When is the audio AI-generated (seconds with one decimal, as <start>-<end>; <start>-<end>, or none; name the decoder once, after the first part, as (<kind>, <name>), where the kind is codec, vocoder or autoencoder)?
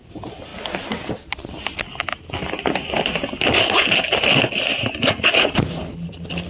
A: 5.1-5.8 (vocoder, Vocos)